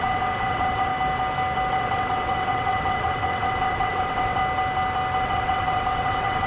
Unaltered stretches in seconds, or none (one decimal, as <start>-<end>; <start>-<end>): 0.9-1.7; 4.4-5.2